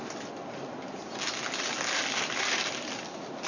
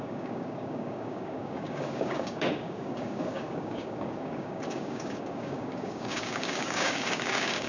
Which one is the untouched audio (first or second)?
first